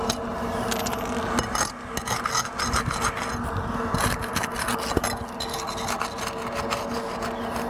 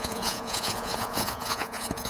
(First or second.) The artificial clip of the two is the second